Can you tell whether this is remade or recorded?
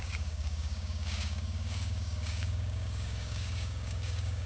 remade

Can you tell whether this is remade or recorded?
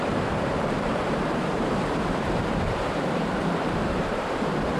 remade